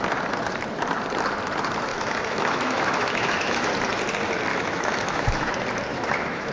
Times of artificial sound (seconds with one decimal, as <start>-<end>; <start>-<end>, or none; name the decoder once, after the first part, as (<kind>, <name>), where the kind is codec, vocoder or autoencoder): 1.9-3.7 (autoencoder, DAC-VAE); 4.5-5.5; 5.9-6.5